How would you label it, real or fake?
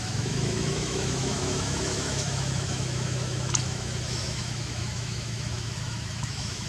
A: fake